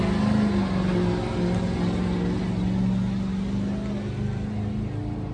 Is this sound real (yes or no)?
yes